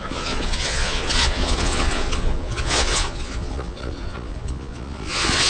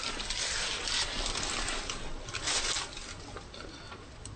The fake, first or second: first